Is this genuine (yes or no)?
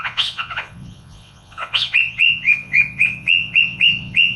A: no